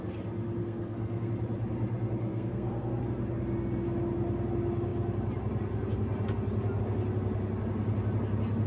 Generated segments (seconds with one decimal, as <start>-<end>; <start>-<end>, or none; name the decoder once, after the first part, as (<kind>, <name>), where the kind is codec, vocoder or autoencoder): 0.6-1.3 (codec, SNAC); 2.3-3.0